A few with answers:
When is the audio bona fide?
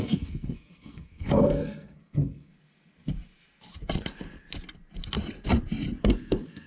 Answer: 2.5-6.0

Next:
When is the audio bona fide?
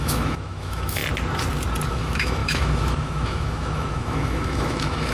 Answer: 1.0-1.9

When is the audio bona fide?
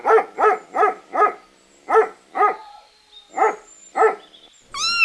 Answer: 0.0-5.0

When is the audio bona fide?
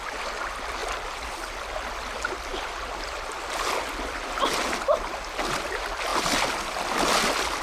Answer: 0.0-7.6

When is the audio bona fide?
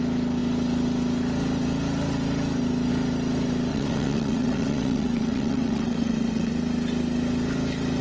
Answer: 0.0-3.7; 6.5-8.0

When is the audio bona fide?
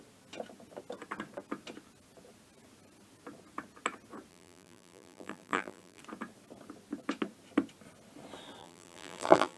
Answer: 0.0-4.3; 6.0-8.6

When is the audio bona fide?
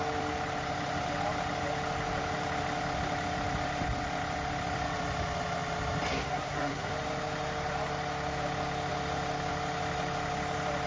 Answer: 0.0-6.1; 6.9-10.9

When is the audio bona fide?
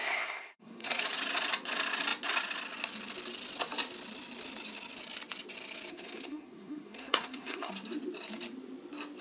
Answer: 1.0-5.9; 7.7-9.2